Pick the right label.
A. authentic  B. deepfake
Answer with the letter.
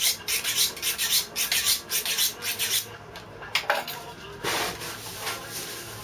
A